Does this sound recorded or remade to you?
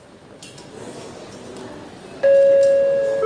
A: recorded